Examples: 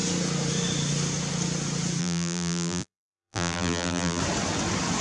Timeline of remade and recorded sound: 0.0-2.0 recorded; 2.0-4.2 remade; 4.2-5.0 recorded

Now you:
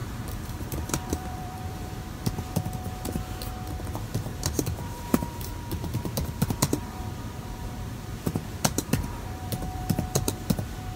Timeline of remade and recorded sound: 0.0-2.0 remade; 2.0-4.3 recorded; 4.3-6.1 remade; 6.1-6.8 recorded; 6.8-9.8 remade; 9.8-11.0 recorded